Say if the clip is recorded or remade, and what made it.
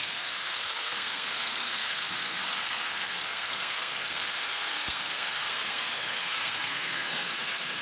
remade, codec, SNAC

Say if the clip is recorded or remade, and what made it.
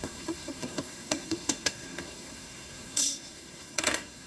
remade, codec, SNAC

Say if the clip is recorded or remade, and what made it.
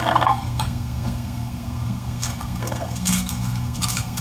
remade, codec, SNAC